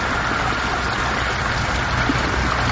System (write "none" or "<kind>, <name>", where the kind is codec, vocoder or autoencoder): none